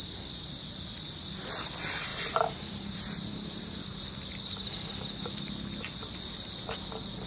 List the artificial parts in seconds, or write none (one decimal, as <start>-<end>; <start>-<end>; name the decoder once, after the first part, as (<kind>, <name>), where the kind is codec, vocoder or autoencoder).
2.1-3.8 (vocoder, BigVGAN v2)